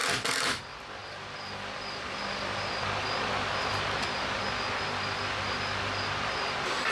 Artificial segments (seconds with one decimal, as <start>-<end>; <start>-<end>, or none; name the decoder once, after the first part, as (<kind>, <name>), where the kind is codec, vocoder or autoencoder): none